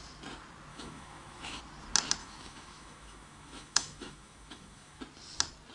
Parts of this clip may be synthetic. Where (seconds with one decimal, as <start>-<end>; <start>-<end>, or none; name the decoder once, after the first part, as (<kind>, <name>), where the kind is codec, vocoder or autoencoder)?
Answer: 0.7-1.6 (autoencoder, DAC-VAE); 2.2-5.0